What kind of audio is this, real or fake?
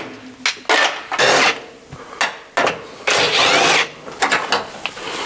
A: real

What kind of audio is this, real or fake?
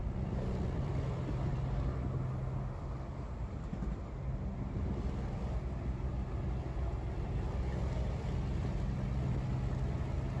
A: real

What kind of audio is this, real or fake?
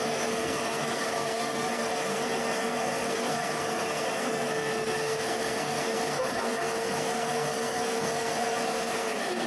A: fake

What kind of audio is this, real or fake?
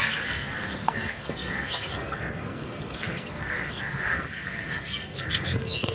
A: fake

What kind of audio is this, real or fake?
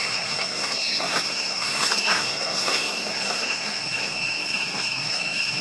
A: fake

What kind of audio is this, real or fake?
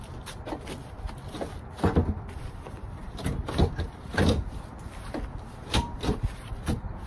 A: real